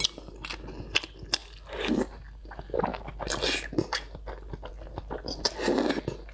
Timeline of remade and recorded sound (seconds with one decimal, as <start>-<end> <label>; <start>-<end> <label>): 0.0-6.3 recorded